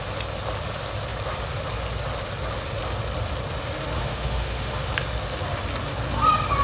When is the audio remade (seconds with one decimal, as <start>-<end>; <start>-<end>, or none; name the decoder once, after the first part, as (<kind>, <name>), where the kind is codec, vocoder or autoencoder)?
4.0-4.9 (autoencoder, DAC-VAE)